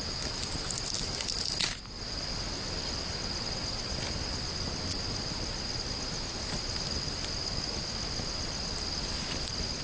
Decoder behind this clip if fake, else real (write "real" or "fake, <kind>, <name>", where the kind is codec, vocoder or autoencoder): real